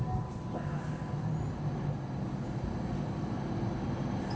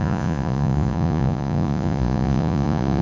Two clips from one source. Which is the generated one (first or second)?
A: second